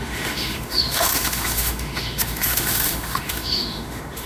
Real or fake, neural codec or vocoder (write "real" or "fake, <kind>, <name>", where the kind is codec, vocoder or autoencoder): fake, autoencoder, DAC-VAE